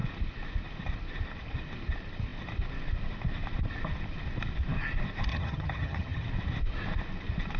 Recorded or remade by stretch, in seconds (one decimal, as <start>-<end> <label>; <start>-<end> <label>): 0.0-5.3 recorded; 5.3-6.3 remade; 6.3-7.6 recorded